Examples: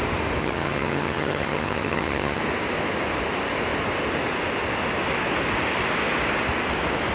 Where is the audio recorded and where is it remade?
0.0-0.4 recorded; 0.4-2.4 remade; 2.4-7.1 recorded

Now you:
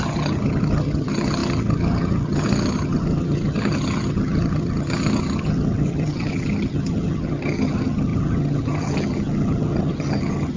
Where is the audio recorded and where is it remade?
0.0-10.6 remade

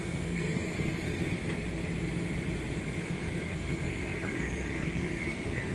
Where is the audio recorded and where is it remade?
0.0-1.4 remade; 1.4-2.8 recorded; 2.8-5.7 remade

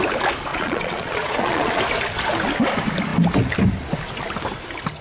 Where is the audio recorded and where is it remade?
0.0-0.5 recorded; 0.5-1.8 remade; 1.8-5.0 recorded

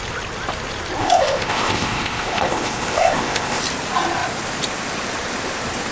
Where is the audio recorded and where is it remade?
0.0-1.0 recorded; 1.0-3.6 remade; 3.6-5.9 recorded